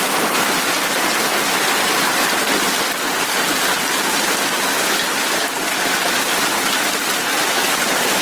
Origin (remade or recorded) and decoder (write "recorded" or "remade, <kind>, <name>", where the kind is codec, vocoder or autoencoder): recorded